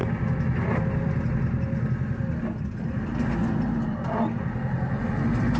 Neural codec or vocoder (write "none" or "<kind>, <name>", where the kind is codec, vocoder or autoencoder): none